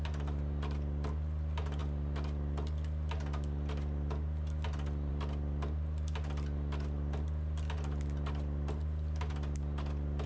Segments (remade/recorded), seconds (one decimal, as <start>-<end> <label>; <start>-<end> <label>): 0.0-10.3 recorded